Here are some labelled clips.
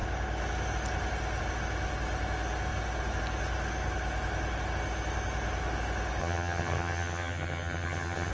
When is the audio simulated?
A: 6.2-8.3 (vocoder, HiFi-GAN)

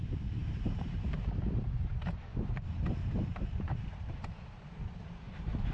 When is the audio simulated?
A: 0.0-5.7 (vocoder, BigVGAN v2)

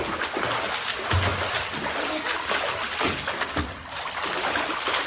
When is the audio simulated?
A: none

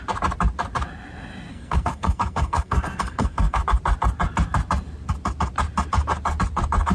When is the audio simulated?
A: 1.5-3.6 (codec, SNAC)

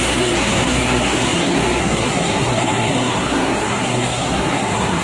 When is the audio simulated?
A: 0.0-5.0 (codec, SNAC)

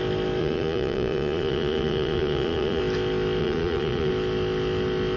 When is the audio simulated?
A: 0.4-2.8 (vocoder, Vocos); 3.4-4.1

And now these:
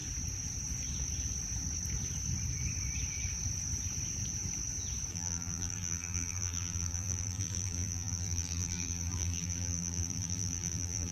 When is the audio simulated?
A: 5.1-11.1 (vocoder, BigVGAN v2)

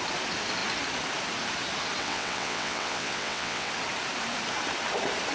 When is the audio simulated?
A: 2.0-3.7 (vocoder, WaveNeXt)